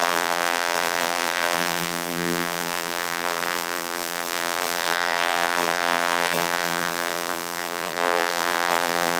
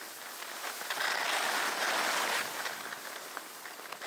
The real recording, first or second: second